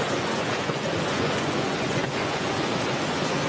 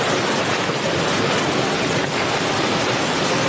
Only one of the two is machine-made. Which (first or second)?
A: first